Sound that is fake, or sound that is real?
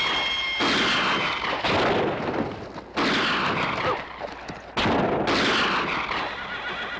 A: real